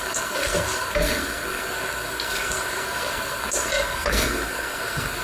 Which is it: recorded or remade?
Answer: remade